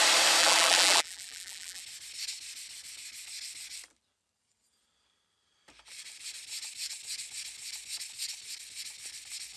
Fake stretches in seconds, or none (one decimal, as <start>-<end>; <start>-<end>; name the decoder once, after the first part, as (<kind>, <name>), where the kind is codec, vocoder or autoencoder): 0.4-1.8 (vocoder, BigVGAN v2)